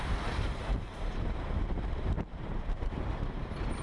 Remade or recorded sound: remade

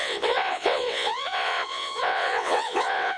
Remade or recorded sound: remade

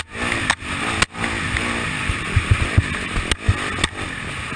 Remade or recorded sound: recorded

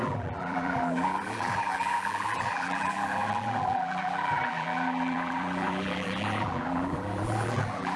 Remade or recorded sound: remade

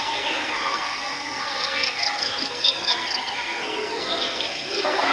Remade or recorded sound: remade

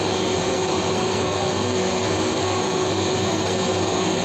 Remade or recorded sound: remade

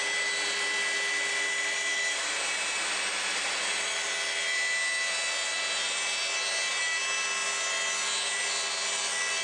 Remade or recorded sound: recorded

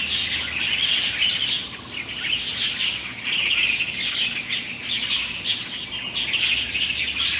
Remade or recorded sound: recorded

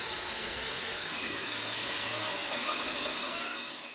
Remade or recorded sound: remade